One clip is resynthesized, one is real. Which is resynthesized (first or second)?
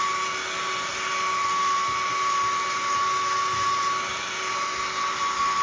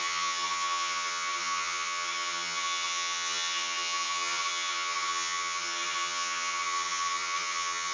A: second